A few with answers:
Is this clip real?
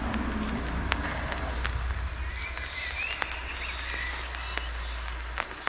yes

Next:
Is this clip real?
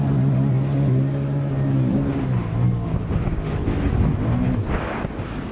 yes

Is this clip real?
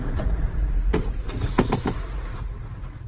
no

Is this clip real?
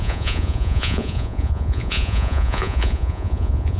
no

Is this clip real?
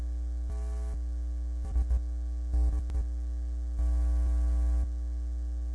yes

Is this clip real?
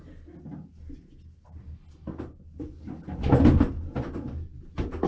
yes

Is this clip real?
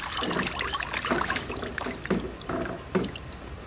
yes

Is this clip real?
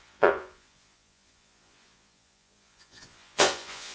no